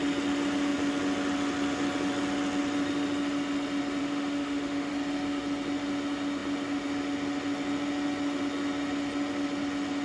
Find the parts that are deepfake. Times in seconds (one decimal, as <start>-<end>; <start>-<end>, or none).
4.0-4.9